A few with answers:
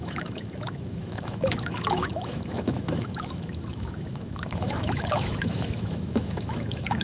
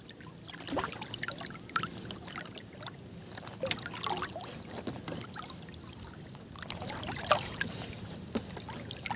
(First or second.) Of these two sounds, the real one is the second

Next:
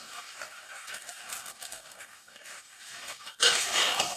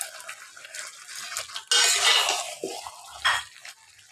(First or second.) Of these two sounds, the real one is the second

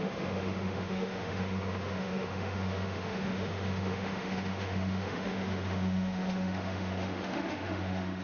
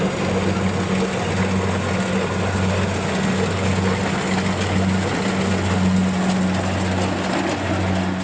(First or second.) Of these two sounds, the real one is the second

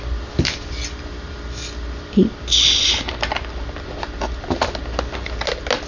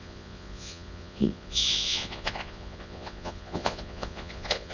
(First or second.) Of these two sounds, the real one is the first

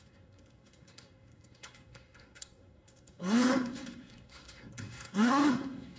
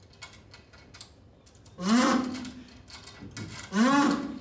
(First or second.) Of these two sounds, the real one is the second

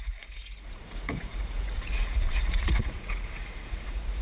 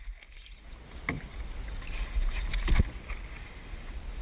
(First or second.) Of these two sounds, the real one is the second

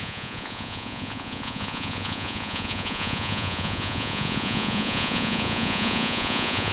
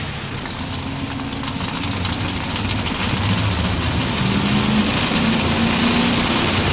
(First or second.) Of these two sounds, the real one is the second